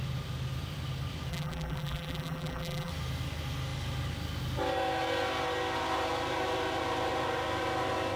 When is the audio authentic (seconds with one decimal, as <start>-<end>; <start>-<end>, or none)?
0.0-1.3; 2.9-8.2